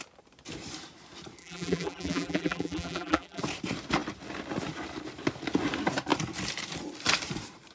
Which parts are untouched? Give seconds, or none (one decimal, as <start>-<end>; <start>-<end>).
0.0-1.4; 3.4-7.7